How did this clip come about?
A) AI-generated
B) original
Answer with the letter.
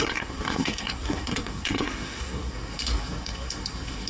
A